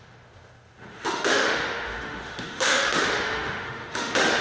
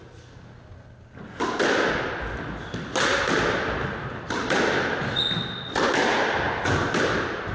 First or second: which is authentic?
second